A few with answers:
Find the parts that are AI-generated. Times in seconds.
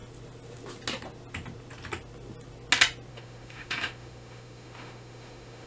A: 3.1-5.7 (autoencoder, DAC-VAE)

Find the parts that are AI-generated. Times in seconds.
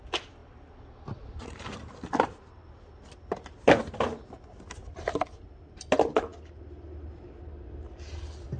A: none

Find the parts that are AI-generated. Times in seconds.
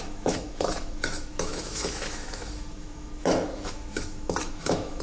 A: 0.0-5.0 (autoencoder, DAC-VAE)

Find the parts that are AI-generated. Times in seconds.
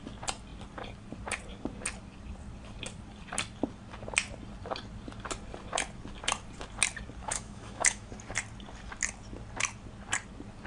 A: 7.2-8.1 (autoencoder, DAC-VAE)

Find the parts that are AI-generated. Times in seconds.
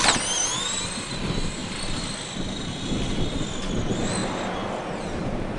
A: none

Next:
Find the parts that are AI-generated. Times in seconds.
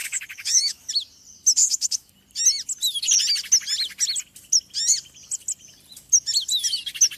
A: 0.0-0.9 (autoencoder, DAC-VAE); 1.6-2.1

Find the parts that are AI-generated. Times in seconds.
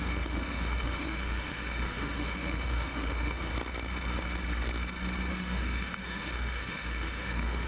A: 0.0-3.5 (autoencoder, DAC-VAE); 5.3-7.7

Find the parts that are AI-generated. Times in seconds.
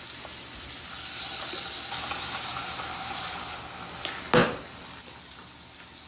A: none